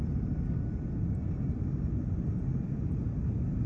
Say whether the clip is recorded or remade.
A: recorded